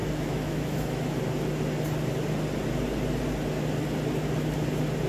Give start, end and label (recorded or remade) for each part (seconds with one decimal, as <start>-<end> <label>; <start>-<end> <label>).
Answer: 0.0-1.2 remade; 1.2-5.1 recorded

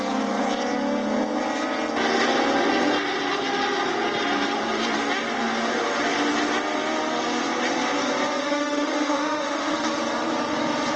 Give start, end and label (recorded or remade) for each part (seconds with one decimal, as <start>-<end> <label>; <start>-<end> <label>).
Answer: 0.0-8.4 recorded; 8.4-9.7 remade; 9.7-11.0 recorded